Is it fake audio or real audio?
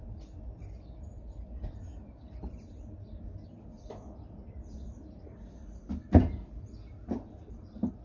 fake